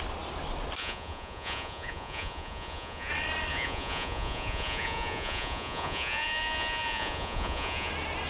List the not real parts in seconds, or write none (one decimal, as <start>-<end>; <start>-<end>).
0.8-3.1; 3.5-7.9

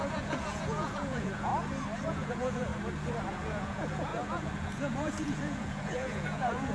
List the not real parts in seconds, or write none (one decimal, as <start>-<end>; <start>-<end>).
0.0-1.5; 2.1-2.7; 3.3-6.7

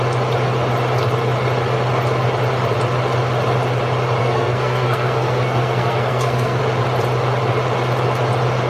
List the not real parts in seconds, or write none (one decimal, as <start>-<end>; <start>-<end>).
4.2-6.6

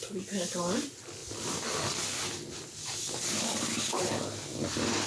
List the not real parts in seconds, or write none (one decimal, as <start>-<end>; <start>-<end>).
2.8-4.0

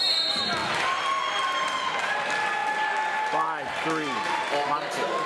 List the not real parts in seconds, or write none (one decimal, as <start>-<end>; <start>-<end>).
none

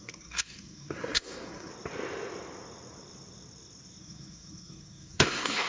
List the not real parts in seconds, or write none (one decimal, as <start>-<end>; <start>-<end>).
0.0-1.7; 4.0-5.7

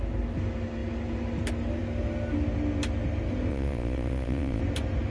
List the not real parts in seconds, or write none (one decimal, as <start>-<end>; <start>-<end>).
3.5-4.6